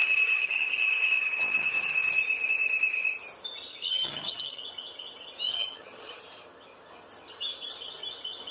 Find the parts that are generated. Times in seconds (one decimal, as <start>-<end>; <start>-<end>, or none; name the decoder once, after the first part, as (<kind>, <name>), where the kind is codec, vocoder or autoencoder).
0.0-1.7 (vocoder, HiFi-GAN); 3.7-4.6; 5.5-6.2